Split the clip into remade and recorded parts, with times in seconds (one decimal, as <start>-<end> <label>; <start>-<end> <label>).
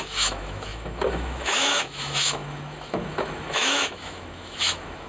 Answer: 0.0-5.1 remade